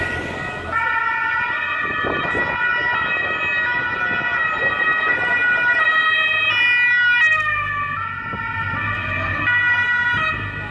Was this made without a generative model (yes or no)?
yes